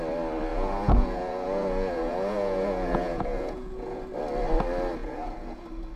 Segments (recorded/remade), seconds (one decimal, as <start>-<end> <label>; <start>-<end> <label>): 0.0-0.5 recorded; 0.5-4.1 remade; 4.1-5.0 recorded; 5.0-5.6 remade; 5.6-6.0 recorded